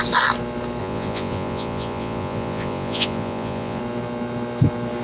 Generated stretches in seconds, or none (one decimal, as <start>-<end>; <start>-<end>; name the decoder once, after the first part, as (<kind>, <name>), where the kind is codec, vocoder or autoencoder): 0.8-3.8 (vocoder, Vocos)